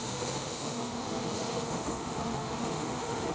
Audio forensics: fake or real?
fake